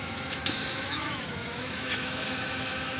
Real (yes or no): no